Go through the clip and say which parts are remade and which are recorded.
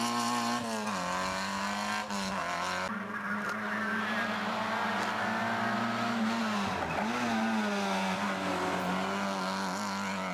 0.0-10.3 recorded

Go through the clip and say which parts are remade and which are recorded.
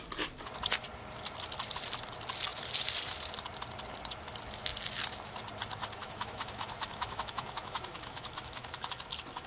0.0-6.0 recorded; 6.0-9.0 remade; 9.0-9.5 recorded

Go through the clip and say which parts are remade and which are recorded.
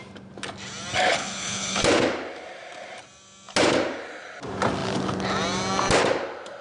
0.0-1.1 recorded; 1.1-1.8 remade; 1.8-6.6 recorded